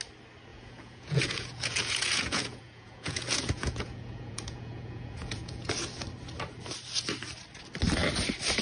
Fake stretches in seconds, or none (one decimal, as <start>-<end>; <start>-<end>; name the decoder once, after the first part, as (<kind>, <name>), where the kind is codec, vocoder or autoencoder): 0.5-5.7 (vocoder, Vocos)